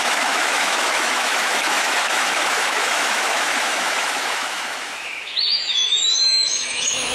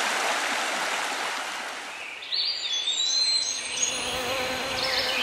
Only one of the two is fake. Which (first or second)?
first